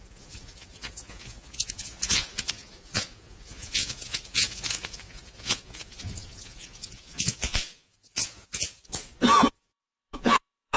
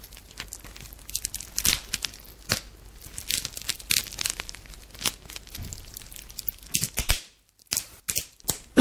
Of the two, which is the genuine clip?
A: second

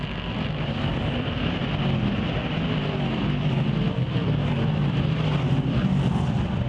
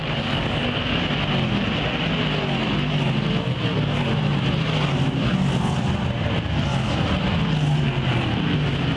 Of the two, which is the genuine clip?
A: second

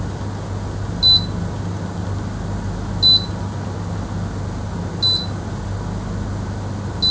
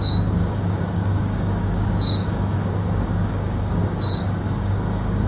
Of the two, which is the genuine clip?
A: first